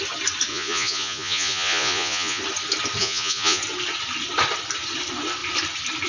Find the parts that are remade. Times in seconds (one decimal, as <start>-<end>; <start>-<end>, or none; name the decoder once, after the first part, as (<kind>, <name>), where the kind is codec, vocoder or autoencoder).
0.5-2.4 (vocoder, Vocos); 3.0-3.6